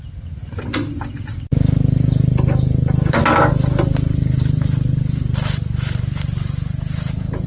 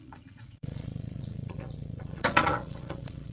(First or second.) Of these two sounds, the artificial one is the second